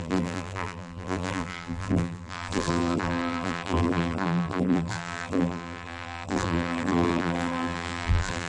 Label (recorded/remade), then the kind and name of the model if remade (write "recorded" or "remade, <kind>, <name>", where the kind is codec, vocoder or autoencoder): remade, vocoder, BigVGAN v2